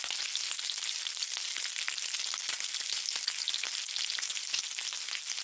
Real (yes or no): yes